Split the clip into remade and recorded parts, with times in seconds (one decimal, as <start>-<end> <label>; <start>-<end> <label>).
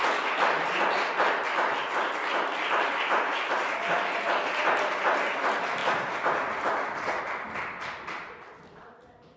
0.0-9.4 recorded